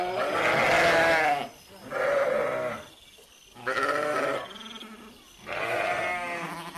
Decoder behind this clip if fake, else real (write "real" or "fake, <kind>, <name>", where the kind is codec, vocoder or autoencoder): real